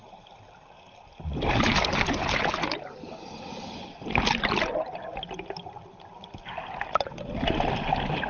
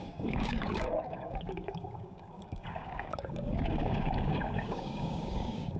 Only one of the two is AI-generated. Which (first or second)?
second